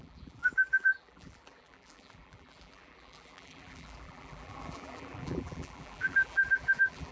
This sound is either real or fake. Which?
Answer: fake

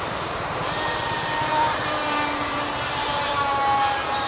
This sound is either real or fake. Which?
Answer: fake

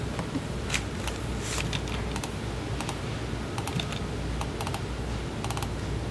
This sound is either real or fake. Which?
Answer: real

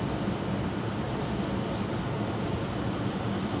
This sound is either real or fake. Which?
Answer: real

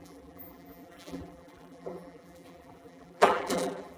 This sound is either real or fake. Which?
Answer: fake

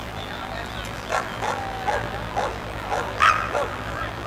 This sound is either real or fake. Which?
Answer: fake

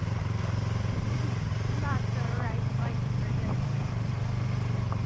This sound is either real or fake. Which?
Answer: fake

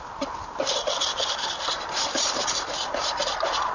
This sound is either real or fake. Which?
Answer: fake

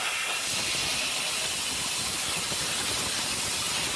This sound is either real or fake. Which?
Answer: fake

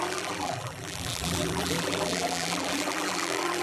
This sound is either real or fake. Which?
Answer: fake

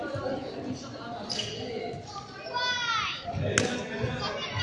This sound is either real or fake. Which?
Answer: real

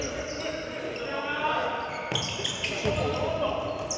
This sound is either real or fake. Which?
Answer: real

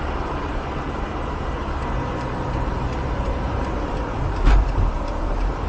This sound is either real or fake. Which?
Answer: fake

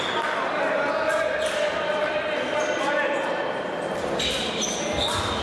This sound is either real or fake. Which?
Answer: real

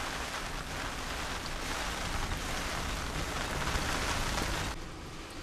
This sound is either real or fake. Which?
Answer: real